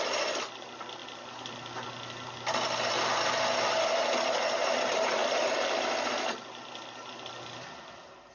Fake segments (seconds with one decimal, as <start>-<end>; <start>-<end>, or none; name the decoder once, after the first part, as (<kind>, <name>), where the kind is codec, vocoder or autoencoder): none